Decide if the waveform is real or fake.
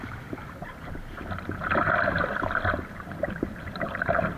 fake